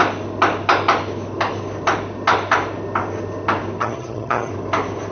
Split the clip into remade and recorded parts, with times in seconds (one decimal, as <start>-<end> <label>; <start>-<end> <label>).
0.0-3.8 recorded; 3.8-4.5 remade; 4.5-5.1 recorded